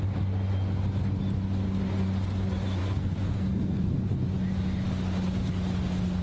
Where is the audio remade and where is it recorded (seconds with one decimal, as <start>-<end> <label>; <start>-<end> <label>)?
0.0-2.8 recorded; 2.8-4.1 remade; 4.1-6.2 recorded